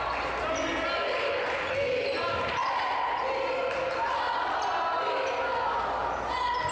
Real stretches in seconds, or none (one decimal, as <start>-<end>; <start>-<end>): 0.0-6.7